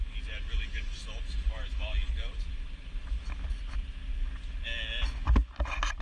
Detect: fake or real real